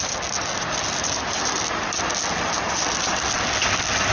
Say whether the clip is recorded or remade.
recorded